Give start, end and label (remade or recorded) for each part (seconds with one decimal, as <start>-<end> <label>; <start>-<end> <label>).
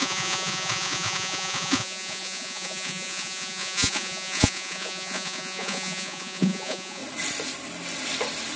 0.0-7.0 remade; 7.0-8.6 recorded